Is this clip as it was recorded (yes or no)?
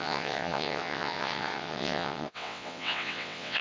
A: no